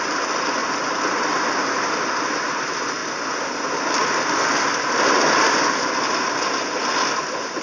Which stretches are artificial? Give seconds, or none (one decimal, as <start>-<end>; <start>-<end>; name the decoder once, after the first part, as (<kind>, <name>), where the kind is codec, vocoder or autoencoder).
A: none